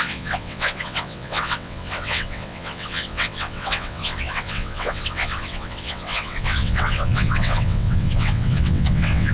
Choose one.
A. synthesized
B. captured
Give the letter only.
A